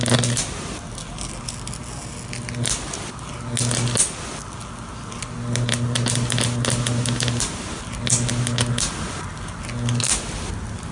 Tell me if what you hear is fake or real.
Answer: real